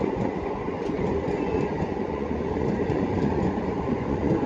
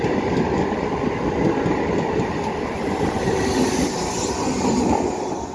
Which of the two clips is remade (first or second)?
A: first